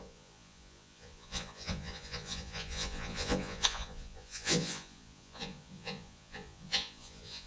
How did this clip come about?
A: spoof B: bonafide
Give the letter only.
A